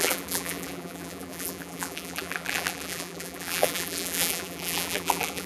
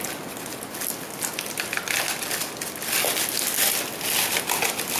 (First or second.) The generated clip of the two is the first